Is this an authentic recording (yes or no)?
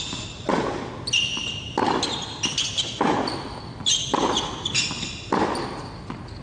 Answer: yes